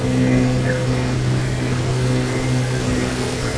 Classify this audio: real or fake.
fake